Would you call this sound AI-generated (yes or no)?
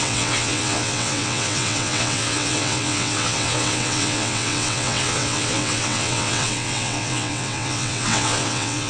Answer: yes